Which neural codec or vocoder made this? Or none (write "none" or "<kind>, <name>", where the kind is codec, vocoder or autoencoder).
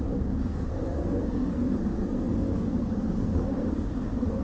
codec, SNAC